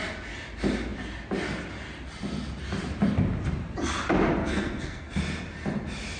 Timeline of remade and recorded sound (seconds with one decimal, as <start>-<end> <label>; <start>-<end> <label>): 0.0-4.4 recorded; 4.4-5.2 remade; 5.2-6.2 recorded